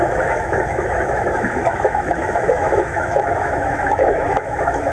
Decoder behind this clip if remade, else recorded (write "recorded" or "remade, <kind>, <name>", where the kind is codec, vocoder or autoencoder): remade, autoencoder, DAC-VAE